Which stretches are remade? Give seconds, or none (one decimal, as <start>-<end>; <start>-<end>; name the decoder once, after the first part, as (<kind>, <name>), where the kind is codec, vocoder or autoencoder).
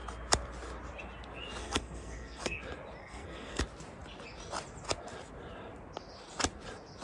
1.6-2.6 (codec, SNAC); 3.0-3.6